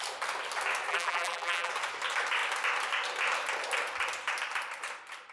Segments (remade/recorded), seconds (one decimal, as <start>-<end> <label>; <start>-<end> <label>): 0.0-0.9 recorded; 0.9-1.7 remade; 1.7-5.3 recorded